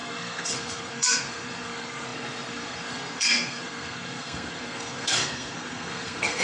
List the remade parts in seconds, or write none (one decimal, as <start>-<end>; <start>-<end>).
0.0-6.4